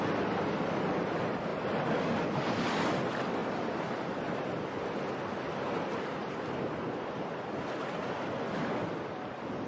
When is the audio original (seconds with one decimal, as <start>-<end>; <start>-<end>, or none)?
0.0-9.7